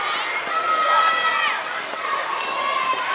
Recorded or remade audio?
recorded